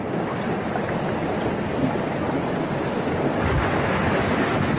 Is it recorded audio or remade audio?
recorded